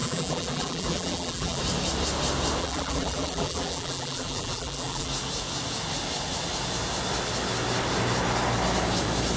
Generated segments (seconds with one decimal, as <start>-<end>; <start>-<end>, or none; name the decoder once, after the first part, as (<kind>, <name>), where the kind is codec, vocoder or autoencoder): 0.0-1.6 (vocoder, BigVGAN v2); 2.6-5.1